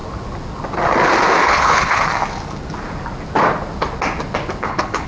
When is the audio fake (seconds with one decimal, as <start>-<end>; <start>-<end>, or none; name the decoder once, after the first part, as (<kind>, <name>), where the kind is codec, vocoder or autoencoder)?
1.4-2.1 (codec, HILCodec); 4.6-5.1